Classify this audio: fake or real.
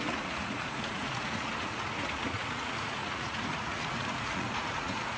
fake